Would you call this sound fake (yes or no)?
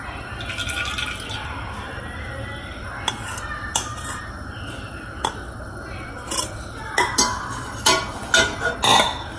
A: no